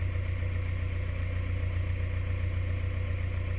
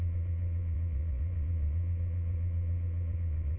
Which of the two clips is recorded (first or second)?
first